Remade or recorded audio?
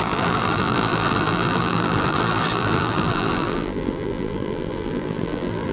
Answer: remade